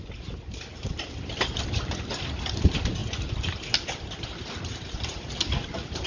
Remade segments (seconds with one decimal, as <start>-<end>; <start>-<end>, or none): 0.8-3.0; 3.9-6.1